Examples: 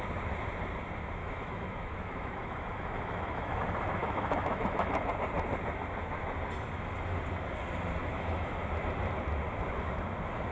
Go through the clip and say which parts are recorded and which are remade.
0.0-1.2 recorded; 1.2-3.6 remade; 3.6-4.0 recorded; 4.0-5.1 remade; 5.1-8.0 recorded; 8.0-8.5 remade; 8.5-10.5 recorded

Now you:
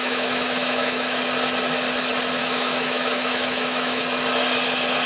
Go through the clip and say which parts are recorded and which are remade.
0.0-1.2 remade; 1.2-2.4 recorded; 2.4-4.0 remade; 4.0-5.1 recorded

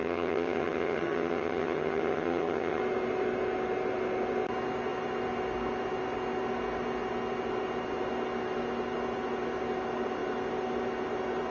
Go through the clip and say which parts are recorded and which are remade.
0.0-2.8 remade; 2.8-11.5 recorded

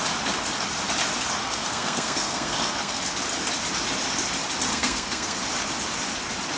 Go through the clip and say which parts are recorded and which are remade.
0.0-1.4 recorded; 1.4-3.0 remade; 3.0-4.7 recorded; 4.7-5.4 remade; 5.4-6.6 recorded

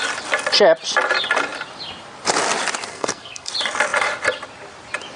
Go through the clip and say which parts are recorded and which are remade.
0.0-2.9 recorded; 2.9-3.5 remade; 3.5-5.2 recorded

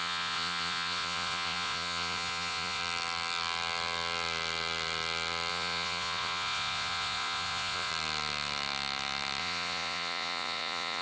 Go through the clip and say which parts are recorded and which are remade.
0.0-2.8 remade; 2.8-5.5 recorded; 5.5-7.9 remade; 7.9-9.4 recorded; 9.4-11.0 remade